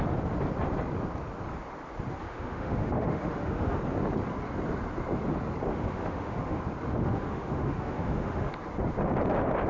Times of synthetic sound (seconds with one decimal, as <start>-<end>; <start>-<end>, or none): 2.2-3.8; 5.7-6.6; 7.0-8.5

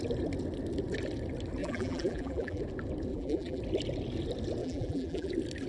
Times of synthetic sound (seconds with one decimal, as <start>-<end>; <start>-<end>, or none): 1.6-2.6; 3.1-3.6; 4.6-5.3

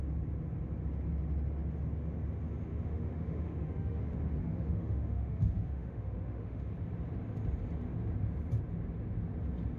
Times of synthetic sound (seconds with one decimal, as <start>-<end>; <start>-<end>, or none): 2.7-4.0; 4.4-6.7

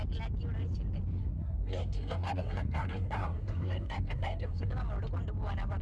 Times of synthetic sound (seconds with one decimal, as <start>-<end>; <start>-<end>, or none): 1.2-4.7

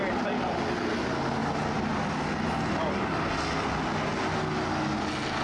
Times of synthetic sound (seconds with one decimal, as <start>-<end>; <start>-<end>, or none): none

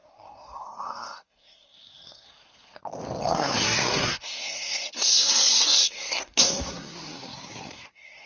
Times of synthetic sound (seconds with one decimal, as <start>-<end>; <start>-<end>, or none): 0.0-2.8; 3.2-8.3

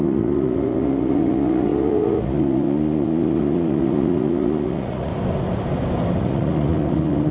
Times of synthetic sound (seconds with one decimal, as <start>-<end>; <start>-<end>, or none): 0.0-5.1; 6.2-7.3

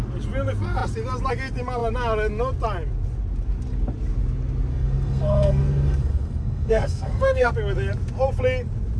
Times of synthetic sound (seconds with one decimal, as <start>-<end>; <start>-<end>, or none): 4.7-7.5